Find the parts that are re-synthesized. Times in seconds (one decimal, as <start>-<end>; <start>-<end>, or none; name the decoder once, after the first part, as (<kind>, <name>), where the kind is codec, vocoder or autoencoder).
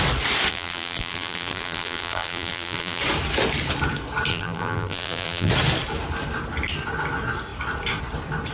0.5-3.0 (vocoder, BigVGAN v2); 4.3-5.5